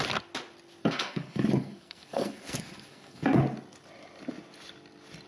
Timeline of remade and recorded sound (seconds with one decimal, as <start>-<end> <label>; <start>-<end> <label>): 0.0-0.8 recorded; 0.8-3.4 remade; 3.4-5.3 recorded